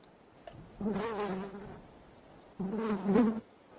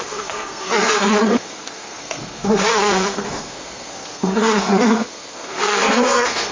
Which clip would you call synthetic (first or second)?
second